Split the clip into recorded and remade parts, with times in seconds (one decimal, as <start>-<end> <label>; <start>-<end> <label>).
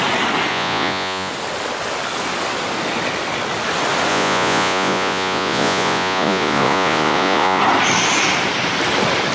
0.0-0.5 recorded; 0.5-1.3 remade; 1.3-4.1 recorded; 4.1-7.6 remade; 7.6-9.3 recorded